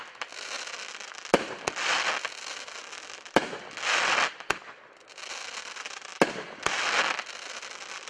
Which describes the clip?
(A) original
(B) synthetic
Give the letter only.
A